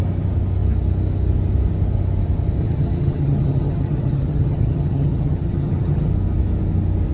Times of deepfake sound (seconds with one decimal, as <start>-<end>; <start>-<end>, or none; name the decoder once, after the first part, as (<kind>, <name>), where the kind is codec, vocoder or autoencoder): 2.6-6.1 (vocoder, HiFi-GAN)